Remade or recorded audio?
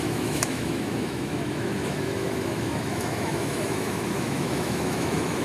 remade